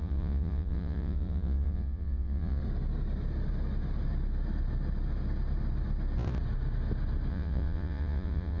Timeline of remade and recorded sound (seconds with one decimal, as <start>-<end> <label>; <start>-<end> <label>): 0.0-2.6 remade; 2.6-7.3 recorded; 7.3-8.6 remade